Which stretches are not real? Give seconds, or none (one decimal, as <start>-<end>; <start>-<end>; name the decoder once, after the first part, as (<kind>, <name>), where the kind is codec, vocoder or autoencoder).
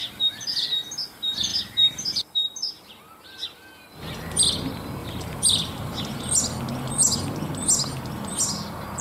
1.5-2.9 (vocoder, BigVGAN v2); 5.0-6.2